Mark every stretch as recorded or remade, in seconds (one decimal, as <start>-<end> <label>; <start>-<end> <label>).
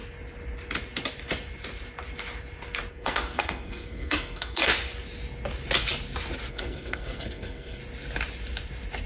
0.0-2.9 recorded; 2.9-4.7 remade; 4.7-6.5 recorded; 6.5-7.8 remade; 7.8-9.1 recorded